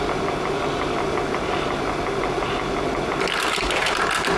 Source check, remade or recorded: recorded